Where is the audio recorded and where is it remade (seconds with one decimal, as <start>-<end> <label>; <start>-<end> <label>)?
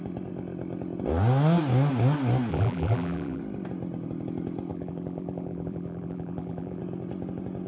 0.0-2.5 recorded; 2.5-3.4 remade; 3.4-4.7 recorded; 4.7-6.8 remade; 6.8-7.7 recorded